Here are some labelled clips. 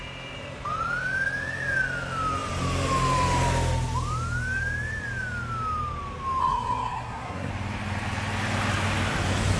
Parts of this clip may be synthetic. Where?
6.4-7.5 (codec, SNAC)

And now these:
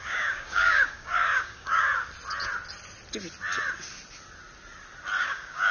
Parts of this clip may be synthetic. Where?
0.0-1.9 (codec, DAC); 5.2-5.7

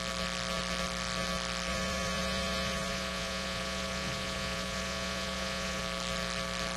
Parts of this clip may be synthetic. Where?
1.7-5.8 (vocoder, Vocos)